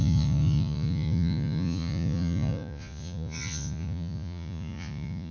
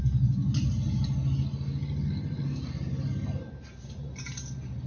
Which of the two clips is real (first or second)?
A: second